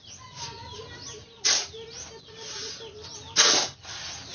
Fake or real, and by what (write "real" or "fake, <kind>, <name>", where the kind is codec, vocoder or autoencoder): real